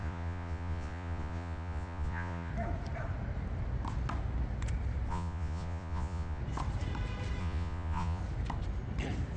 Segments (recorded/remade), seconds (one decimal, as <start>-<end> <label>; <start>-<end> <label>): 0.0-2.5 remade; 2.5-5.1 recorded; 5.1-6.4 remade; 6.4-7.4 recorded; 7.4-8.2 remade; 8.2-9.4 recorded